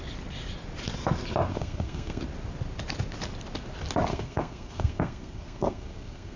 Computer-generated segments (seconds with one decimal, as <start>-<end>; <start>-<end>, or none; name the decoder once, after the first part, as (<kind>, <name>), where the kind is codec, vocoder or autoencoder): 1.5-2.2 (codec, SNAC); 4.1-6.4